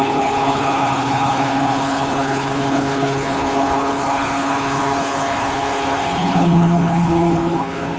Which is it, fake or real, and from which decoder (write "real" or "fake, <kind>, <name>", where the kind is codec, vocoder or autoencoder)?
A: fake, codec, HILCodec